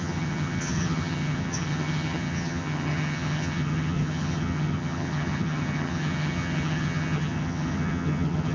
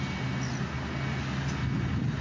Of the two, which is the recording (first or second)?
second